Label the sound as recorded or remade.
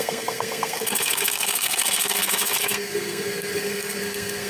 remade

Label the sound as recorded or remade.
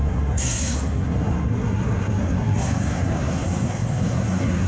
remade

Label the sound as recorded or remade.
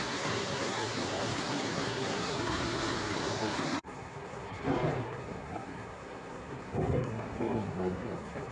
remade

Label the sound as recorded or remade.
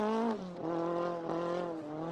recorded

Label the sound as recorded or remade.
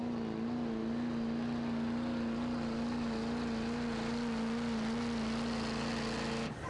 recorded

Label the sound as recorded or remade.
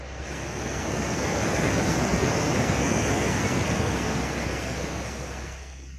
remade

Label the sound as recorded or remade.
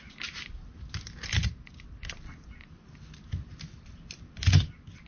recorded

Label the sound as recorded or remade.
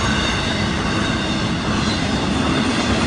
recorded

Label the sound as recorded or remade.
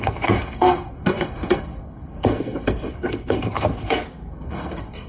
remade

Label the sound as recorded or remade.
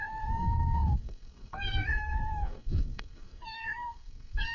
remade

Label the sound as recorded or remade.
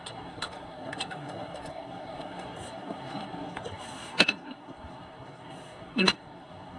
remade